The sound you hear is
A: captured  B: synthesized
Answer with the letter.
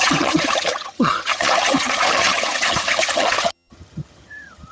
B